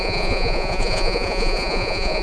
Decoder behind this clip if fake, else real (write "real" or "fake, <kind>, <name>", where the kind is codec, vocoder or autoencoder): fake, vocoder, Vocos